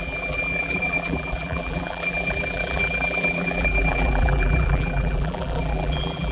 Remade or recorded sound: remade